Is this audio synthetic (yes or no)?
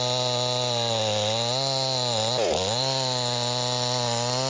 no